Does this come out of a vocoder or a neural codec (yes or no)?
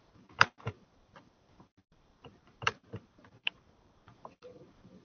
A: yes